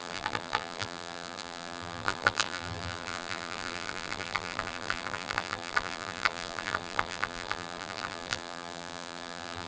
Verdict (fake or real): fake